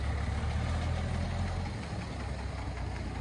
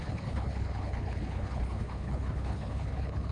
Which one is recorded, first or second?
first